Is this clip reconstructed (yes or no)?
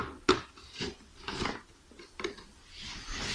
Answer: no